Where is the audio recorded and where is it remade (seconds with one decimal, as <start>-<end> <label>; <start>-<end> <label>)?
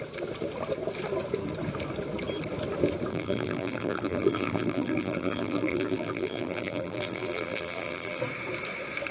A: 0.0-3.1 recorded; 3.1-8.2 remade; 8.2-9.1 recorded